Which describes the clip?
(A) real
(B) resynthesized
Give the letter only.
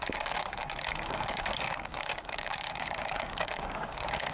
B